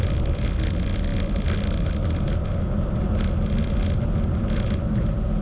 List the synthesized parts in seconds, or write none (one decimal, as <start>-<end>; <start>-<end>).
none